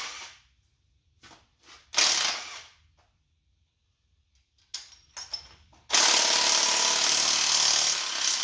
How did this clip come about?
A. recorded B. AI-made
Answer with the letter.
A